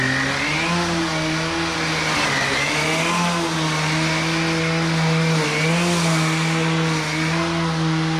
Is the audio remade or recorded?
recorded